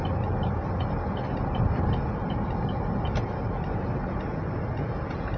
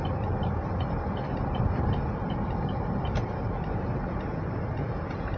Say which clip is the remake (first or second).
second